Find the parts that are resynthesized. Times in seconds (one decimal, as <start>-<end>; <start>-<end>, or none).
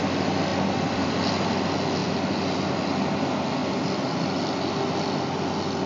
0.5-1.3